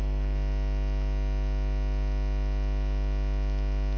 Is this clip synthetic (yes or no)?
no